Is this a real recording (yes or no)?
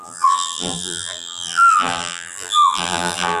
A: no